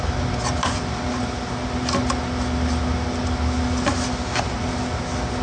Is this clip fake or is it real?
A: real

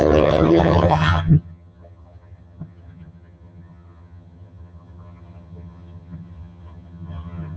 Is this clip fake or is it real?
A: fake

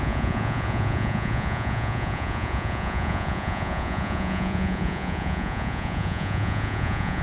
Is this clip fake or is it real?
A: fake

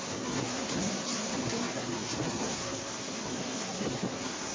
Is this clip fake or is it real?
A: fake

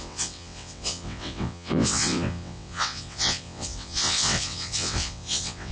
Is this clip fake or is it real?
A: fake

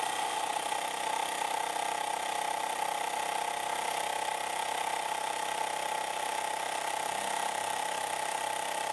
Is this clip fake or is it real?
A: real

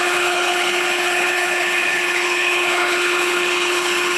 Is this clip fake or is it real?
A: fake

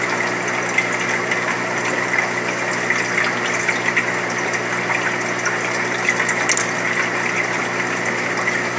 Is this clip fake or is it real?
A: real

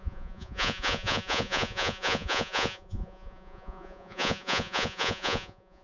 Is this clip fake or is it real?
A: fake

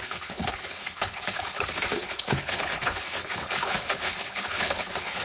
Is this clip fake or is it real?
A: fake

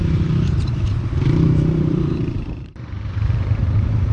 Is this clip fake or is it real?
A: fake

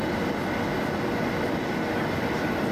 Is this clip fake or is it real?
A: real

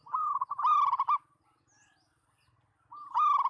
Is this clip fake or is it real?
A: real